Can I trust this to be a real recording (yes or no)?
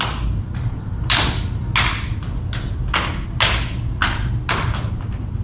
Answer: yes